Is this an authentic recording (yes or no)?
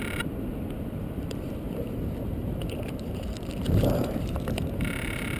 no